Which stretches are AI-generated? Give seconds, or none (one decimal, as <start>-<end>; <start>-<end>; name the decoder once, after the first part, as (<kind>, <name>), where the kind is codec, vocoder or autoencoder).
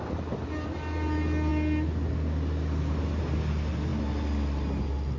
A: none